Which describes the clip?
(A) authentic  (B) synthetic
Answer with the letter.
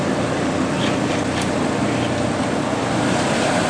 A